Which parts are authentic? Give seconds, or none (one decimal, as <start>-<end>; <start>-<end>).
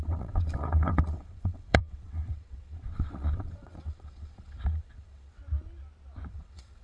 5.4-6.3